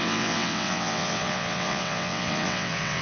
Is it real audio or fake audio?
fake